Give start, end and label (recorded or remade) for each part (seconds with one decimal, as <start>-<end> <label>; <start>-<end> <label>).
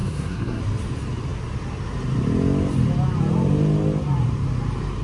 0.0-0.6 remade; 0.6-5.0 recorded